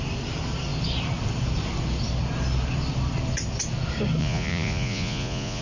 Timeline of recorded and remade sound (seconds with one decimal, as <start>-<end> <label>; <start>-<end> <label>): 0.0-4.2 recorded; 4.2-5.6 remade